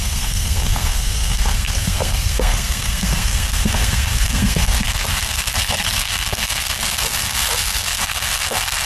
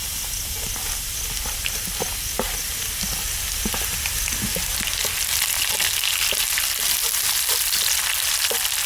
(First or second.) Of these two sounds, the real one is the second